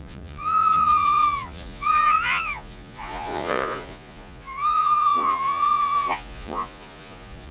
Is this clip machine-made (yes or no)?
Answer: yes